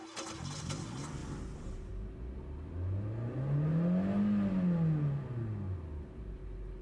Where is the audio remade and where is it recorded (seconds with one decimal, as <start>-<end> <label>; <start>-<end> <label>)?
0.0-6.8 recorded